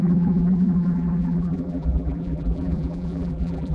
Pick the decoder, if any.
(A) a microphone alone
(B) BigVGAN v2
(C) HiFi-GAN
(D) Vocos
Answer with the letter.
B